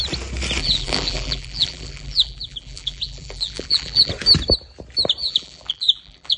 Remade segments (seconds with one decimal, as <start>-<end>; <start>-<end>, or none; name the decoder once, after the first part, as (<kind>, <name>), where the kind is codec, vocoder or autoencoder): 0.6-4.1 (vocoder, BigVGAN v2); 5.2-6.4